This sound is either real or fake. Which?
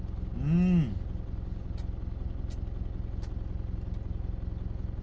real